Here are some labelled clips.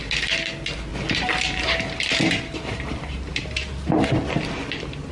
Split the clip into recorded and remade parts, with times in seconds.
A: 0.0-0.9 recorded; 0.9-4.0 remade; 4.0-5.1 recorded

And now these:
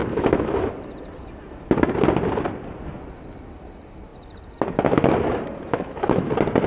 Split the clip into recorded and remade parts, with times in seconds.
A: 0.0-0.7 remade; 0.7-5.7 recorded; 5.7-6.3 remade; 6.3-6.7 recorded

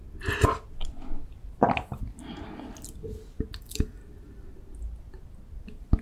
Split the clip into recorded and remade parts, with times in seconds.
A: 0.0-3.6 recorded; 3.6-4.0 remade; 4.0-6.0 recorded

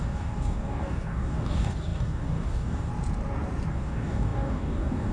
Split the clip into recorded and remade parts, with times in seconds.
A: 0.0-2.9 remade; 2.9-3.7 recorded; 3.7-5.1 remade

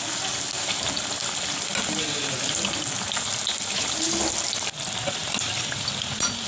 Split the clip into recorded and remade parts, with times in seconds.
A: 0.0-6.5 recorded

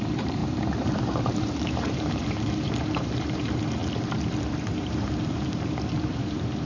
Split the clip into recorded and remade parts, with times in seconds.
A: 0.0-3.8 remade; 3.8-4.7 recorded; 4.7-6.7 remade

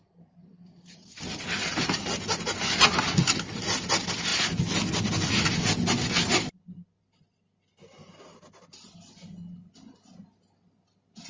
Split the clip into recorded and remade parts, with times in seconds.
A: 0.0-11.3 recorded